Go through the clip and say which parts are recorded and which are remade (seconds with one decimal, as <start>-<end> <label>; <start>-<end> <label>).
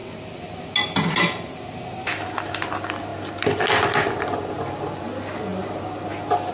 0.0-0.7 remade; 0.7-3.1 recorded; 3.1-5.0 remade; 5.0-5.5 recorded; 5.5-6.0 remade; 6.0-6.5 recorded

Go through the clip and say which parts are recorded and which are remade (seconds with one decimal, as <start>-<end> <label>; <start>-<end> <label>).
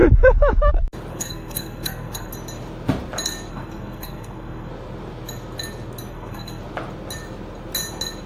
0.0-1.1 recorded; 1.1-2.3 remade; 2.3-3.5 recorded; 3.5-4.7 remade; 4.7-6.1 recorded; 6.1-6.6 remade; 6.6-8.3 recorded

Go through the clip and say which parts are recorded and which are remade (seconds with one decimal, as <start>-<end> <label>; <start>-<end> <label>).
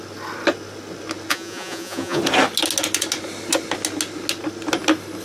0.0-1.3 recorded; 1.3-2.2 remade; 2.2-5.2 recorded